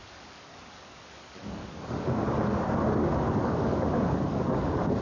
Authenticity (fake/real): fake